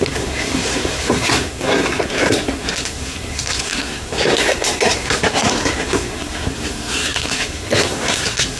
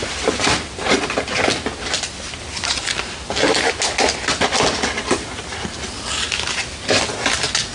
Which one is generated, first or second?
first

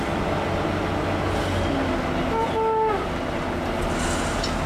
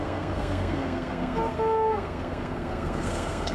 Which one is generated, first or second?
second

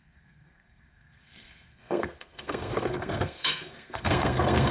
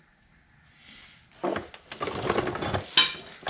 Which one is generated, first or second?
first